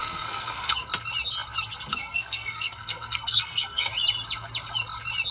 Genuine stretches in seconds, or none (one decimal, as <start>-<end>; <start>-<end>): 0.9-1.9; 3.9-5.3